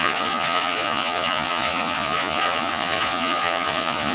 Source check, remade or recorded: remade